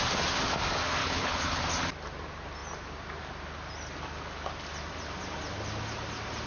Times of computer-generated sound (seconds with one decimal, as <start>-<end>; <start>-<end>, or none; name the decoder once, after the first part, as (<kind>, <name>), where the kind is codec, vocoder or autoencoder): 1.0-1.6 (codec, HILCodec)